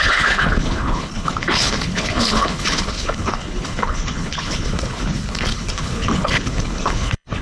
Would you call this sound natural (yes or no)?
no